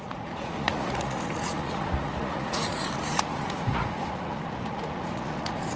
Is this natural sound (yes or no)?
no